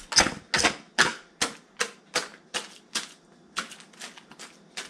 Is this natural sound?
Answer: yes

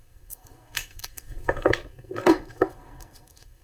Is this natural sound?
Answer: no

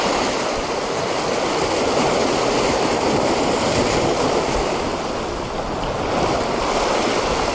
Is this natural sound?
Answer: yes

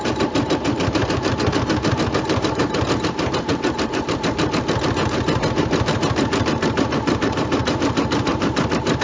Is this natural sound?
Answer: no